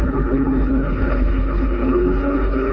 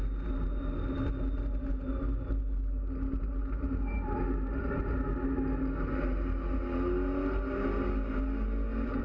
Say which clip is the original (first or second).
second